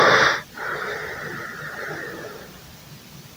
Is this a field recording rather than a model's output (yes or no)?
no